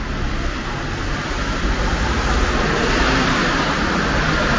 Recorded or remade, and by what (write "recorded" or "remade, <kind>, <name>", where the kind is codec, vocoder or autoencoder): recorded